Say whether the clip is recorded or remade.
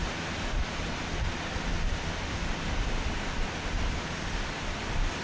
recorded